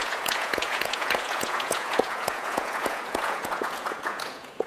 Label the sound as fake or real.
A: fake